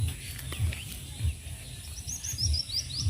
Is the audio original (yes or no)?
yes